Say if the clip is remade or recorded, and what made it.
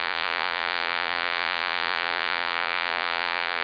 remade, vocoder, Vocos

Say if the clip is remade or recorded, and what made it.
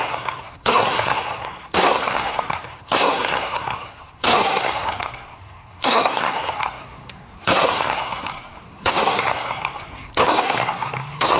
remade, codec, SNAC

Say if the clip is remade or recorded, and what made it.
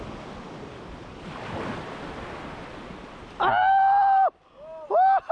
recorded